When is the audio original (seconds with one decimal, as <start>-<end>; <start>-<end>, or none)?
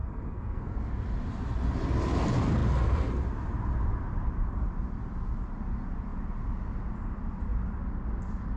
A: 0.8-8.6